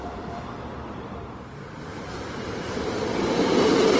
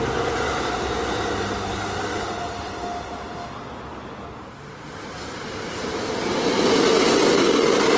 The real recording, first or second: second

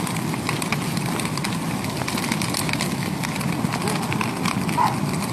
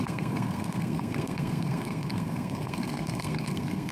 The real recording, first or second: first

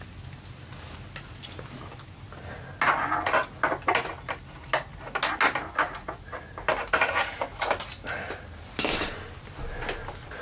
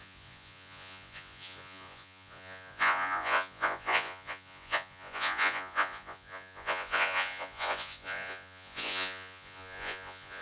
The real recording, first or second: first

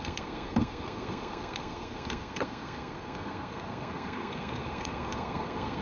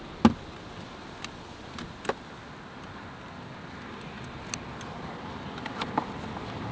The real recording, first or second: second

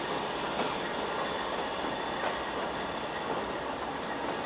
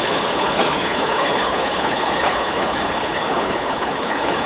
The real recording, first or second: first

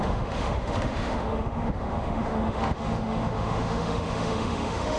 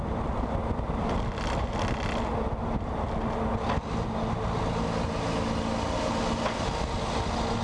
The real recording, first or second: second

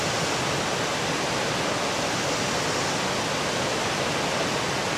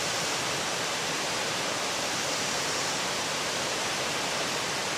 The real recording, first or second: first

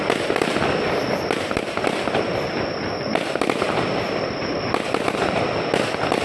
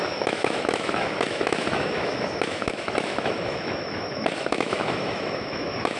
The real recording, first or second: first